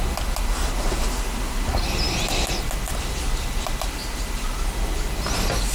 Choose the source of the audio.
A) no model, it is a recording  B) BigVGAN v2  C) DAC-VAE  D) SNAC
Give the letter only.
A